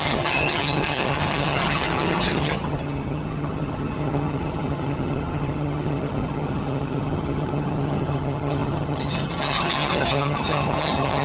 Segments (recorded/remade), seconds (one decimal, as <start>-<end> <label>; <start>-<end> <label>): 0.0-11.2 remade

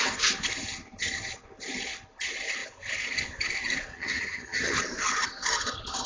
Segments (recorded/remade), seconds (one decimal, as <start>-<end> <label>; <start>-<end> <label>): 0.0-3.9 recorded; 3.9-4.8 remade; 4.8-6.1 recorded

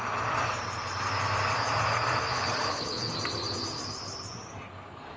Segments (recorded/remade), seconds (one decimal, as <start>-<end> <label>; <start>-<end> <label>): 0.0-2.3 recorded; 2.3-3.1 remade; 3.1-5.2 recorded

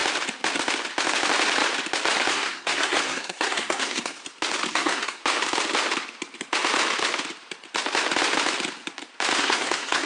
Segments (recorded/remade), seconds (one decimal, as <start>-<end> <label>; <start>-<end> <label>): 0.0-2.3 recorded; 2.3-4.2 remade; 4.2-4.7 recorded; 4.7-5.2 remade; 5.2-9.4 recorded; 9.4-10.1 remade

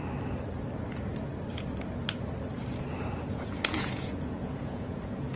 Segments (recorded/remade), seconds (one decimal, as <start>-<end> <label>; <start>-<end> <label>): 0.0-3.2 recorded; 3.2-5.4 remade

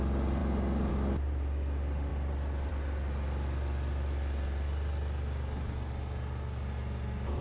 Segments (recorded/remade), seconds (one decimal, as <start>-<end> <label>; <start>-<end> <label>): 0.0-7.4 recorded

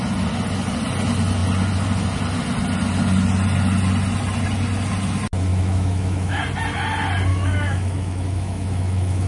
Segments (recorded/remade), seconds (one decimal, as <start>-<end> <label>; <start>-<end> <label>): 0.0-5.5 recorded; 5.5-6.4 remade; 6.4-7.3 recorded; 7.3-9.3 remade

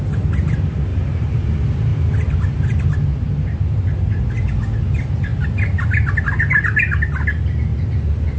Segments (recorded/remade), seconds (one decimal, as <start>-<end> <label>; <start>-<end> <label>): 0.0-0.9 recorded; 0.9-1.4 remade; 1.4-7.7 recorded; 7.7-8.4 remade